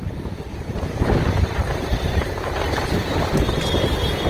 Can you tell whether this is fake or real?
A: fake